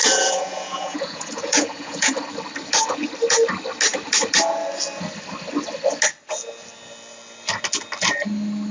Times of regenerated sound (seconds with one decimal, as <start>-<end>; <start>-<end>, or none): 0.0-2.1